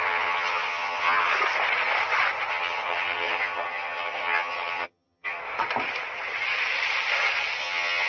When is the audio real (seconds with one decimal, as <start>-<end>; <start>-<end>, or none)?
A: 1.3-2.5; 5.4-7.6